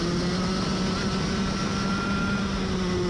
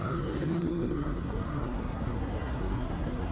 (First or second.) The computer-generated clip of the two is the second